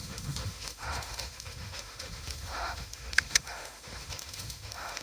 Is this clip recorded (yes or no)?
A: no